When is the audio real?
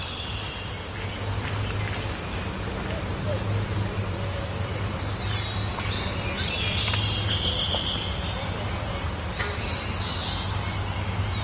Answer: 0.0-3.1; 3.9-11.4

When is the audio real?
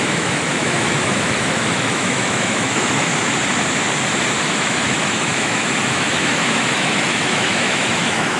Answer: 3.1-4.4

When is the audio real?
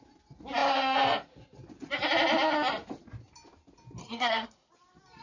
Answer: 0.0-4.0; 4.7-5.2